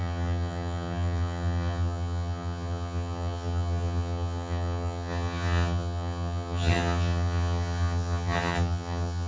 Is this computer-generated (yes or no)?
yes